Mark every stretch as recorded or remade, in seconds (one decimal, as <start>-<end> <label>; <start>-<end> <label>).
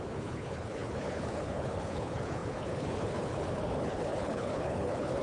0.0-5.2 remade